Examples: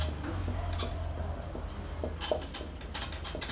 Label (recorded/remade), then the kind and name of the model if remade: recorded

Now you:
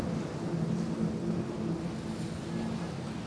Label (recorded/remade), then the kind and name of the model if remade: recorded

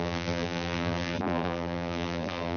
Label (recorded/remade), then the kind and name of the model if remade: remade, vocoder, BigVGAN v2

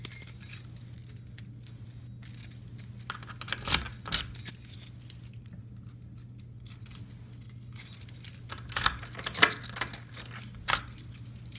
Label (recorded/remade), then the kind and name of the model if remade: recorded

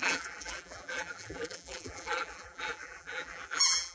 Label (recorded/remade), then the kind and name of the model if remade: remade, vocoder, BigVGAN v2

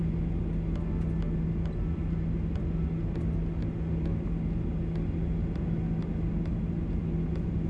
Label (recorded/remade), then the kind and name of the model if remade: recorded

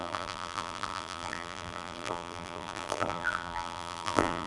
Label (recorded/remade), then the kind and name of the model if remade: remade, vocoder, BigVGAN v2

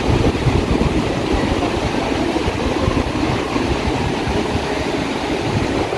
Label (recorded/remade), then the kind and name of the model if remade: remade, vocoder, BigVGAN v2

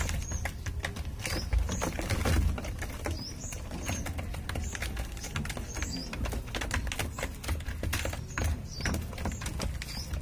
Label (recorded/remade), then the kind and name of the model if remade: recorded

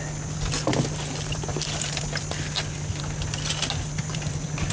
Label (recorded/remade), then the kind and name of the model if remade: recorded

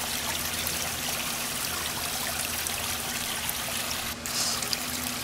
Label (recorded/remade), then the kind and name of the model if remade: recorded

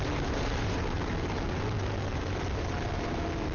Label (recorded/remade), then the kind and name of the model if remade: remade, vocoder, BigVGAN v2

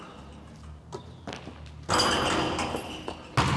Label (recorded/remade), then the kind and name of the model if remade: recorded